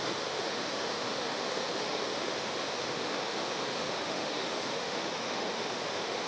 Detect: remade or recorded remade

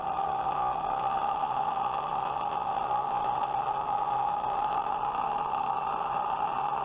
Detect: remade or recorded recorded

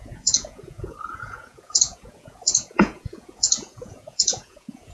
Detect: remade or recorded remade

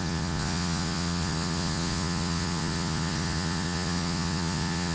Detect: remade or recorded remade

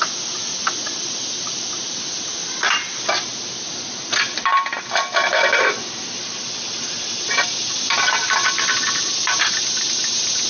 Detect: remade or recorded recorded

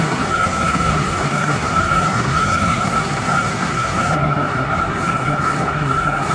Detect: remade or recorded remade